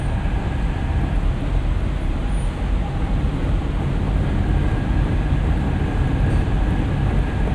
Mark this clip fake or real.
real